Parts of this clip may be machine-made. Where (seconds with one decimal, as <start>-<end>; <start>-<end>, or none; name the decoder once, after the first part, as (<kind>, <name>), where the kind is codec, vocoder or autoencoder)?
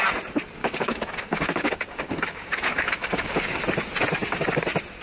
0.6-3.6 (codec, DAC)